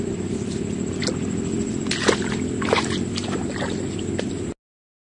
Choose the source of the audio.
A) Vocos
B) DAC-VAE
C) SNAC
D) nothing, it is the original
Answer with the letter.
D